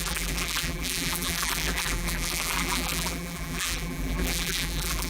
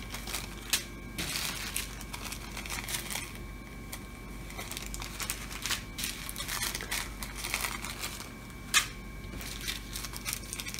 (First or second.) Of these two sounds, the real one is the second